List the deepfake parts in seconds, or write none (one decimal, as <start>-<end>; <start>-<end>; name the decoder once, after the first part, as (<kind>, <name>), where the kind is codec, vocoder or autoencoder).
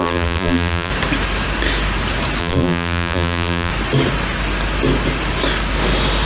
0.0-0.9 (vocoder, BigVGAN v2); 2.4-3.7